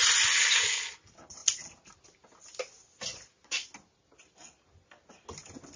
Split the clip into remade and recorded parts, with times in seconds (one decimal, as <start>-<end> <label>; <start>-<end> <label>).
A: 0.0-3.1 recorded; 3.1-3.7 remade; 3.7-5.8 recorded